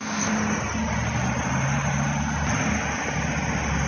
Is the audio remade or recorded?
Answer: recorded